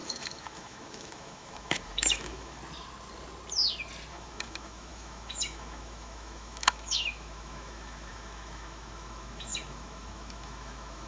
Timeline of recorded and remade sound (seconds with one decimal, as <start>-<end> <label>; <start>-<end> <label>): 0.0-2.6 remade; 2.6-4.1 recorded; 4.1-11.1 remade